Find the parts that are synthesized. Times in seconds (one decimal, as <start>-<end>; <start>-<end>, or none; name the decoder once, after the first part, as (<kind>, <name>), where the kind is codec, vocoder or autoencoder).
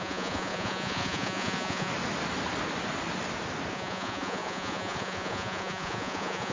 0.0-1.9 (vocoder, Vocos); 3.7-6.5